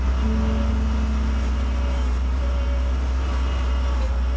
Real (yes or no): yes